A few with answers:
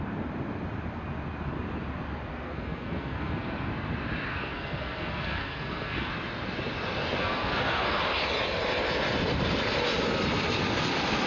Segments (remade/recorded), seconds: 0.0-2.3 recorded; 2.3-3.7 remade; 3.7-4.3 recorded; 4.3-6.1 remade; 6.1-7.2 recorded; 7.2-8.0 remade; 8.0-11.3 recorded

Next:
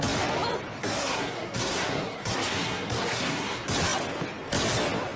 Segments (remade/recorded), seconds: 0.0-0.8 recorded; 0.8-3.7 remade; 3.7-5.2 recorded